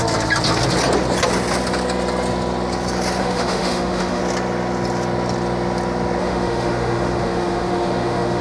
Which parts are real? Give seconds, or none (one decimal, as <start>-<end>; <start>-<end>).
0.0-3.2; 4.2-6.2